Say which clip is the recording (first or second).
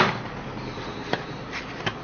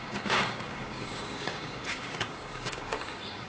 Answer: first